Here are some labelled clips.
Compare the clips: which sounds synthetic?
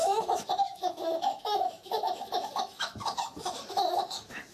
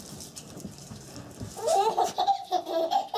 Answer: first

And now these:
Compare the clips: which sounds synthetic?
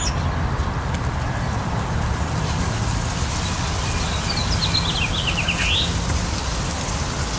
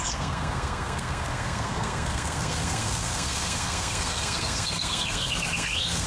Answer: second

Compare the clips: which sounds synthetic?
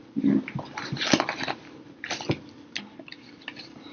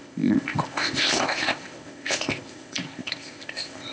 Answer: second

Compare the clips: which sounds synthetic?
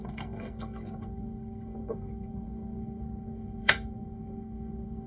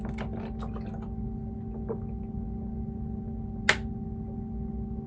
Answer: first